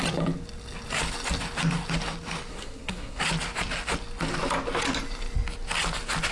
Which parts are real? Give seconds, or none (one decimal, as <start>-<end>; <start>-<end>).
0.0-2.5; 3.2-6.3